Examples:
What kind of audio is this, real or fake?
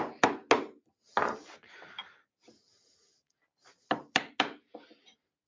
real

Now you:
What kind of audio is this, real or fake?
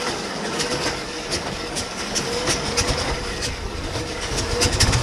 fake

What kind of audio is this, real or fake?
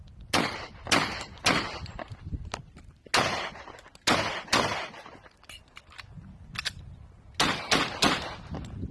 real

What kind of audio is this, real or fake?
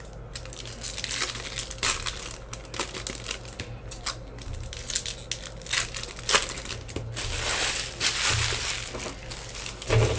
real